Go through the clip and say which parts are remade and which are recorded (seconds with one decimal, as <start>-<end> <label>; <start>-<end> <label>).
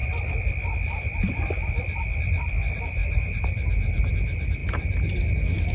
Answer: 0.0-5.7 recorded